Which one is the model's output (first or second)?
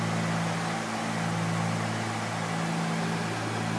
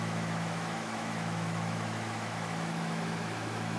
second